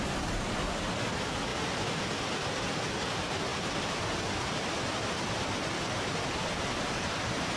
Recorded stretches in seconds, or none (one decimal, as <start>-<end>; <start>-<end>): 0.0-7.6